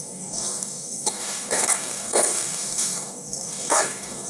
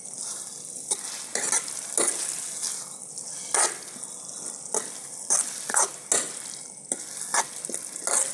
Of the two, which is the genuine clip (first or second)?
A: second